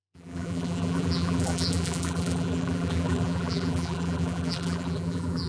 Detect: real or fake fake